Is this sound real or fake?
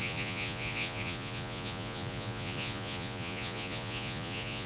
fake